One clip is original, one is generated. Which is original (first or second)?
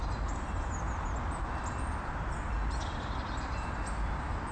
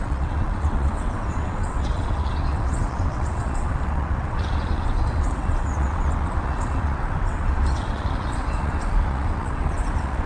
first